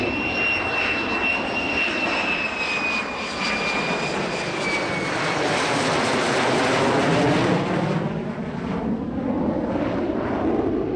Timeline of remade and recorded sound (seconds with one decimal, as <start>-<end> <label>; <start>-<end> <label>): 0.0-1.3 recorded; 1.3-1.8 remade; 1.8-11.0 recorded